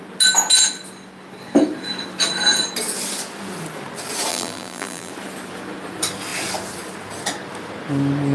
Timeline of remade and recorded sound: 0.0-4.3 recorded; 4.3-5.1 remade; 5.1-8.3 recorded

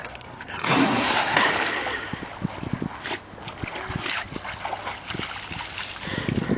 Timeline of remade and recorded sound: 0.0-1.4 remade; 1.4-6.6 recorded